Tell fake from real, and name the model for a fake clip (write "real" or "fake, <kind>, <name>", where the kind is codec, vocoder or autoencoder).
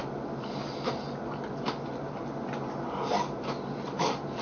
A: real